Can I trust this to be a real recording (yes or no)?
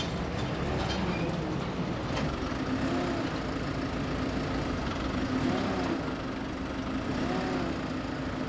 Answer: yes